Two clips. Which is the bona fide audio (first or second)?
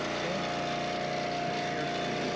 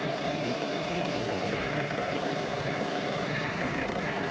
first